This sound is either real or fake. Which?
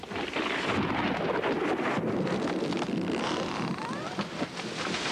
fake